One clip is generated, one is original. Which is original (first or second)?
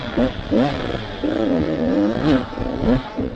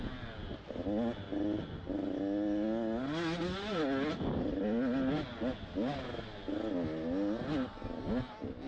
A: second